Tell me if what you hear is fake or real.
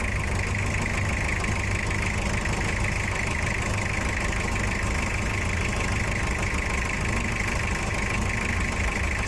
real